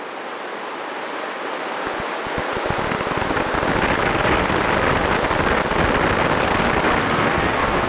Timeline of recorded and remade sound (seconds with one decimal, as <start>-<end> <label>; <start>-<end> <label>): 0.0-7.0 recorded; 7.0-7.9 remade